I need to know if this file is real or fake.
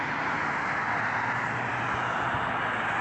real